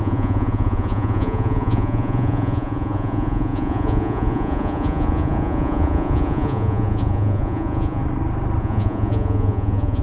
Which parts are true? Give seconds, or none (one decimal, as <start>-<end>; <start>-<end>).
8.0-8.6